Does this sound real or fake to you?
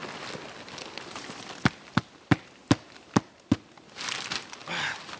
real